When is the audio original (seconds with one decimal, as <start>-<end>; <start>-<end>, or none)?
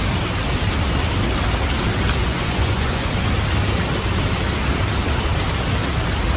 0.0-2.2; 3.1-6.4